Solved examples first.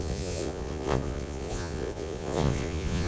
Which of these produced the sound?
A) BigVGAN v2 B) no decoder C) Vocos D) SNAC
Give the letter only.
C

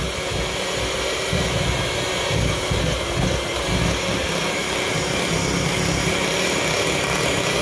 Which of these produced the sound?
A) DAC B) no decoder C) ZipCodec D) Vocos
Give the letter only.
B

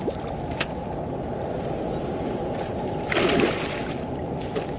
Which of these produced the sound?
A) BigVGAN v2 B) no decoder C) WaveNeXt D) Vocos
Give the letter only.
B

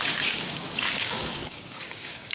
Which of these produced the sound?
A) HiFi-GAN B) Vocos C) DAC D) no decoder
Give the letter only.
C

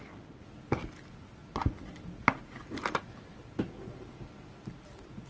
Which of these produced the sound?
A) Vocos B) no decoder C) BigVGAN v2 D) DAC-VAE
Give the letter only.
B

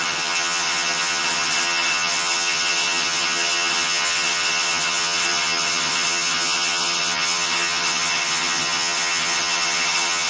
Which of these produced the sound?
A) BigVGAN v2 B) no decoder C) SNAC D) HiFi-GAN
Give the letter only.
D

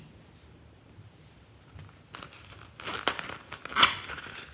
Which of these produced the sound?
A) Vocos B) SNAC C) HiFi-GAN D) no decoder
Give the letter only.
D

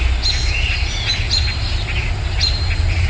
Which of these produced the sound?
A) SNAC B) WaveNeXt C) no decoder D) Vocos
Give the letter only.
C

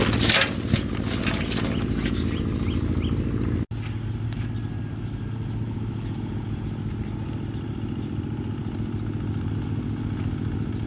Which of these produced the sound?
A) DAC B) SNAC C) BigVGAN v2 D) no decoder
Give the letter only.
D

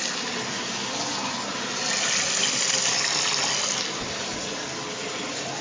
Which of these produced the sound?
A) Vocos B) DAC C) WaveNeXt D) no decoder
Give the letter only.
D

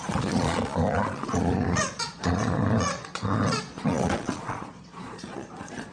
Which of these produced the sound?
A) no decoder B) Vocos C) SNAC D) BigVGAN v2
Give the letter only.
B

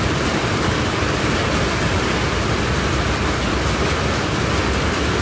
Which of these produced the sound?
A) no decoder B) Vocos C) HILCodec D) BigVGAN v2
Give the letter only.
D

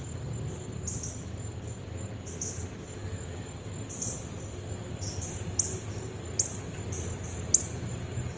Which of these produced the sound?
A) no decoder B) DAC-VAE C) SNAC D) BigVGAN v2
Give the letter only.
A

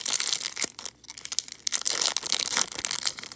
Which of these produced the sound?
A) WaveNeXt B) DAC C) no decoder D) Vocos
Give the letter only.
C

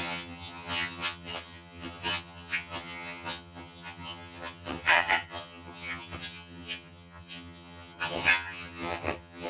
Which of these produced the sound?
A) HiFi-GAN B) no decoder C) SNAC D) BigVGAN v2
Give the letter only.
A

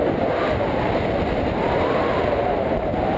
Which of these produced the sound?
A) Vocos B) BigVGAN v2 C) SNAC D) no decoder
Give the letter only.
D